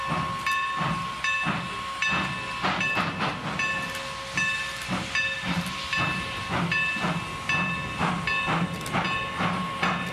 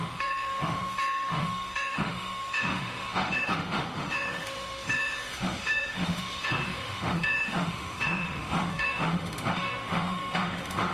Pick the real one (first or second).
first